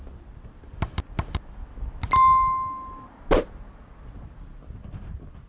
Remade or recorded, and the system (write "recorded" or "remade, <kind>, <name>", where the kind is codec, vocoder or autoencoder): recorded